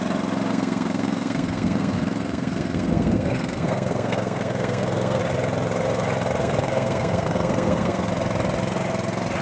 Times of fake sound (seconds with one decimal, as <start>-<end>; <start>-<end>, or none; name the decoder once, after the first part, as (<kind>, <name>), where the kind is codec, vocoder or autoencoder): 0.5-5.2 (codec, SNAC); 6.4-8.1